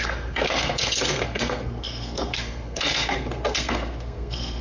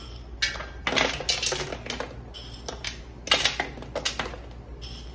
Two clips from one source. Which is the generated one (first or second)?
first